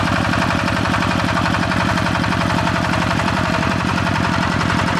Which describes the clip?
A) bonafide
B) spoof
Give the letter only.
B